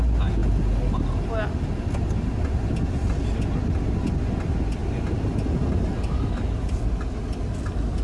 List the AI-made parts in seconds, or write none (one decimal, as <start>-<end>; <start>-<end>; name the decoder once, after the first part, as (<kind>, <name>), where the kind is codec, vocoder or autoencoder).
none